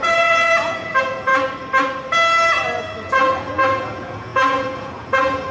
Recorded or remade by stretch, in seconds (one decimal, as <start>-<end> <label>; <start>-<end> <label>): 0.0-1.3 remade; 1.3-3.1 recorded; 3.1-5.5 remade